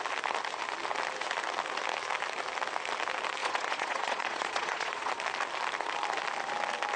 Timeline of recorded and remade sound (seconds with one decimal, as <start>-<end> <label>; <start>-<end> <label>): 0.0-3.4 recorded; 3.4-5.1 remade; 5.1-7.0 recorded